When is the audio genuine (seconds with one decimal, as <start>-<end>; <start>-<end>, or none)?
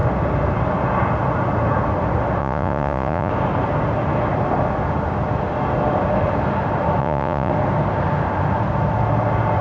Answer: 0.0-2.4; 3.3-7.0; 7.5-9.6